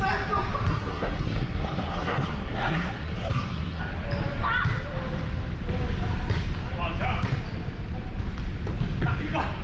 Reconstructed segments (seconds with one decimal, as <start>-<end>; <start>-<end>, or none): 0.7-3.8